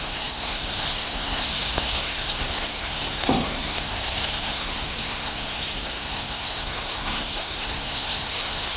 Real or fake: fake